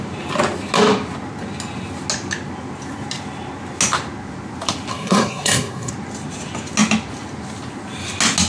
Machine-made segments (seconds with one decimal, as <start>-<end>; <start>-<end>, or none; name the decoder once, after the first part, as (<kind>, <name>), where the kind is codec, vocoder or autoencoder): 4.9-5.9 (codec, SNAC)